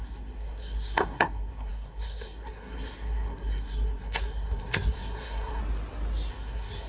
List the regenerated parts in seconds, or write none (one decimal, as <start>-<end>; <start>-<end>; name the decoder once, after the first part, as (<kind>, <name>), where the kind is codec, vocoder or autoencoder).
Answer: 0.0-5.6 (codec, SNAC); 6.3-6.9